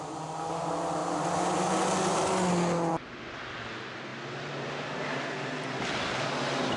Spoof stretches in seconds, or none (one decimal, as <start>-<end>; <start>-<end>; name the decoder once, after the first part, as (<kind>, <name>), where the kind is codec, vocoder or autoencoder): none